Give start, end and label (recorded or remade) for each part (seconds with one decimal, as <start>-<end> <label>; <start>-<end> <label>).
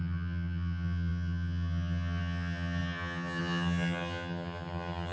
0.0-5.1 remade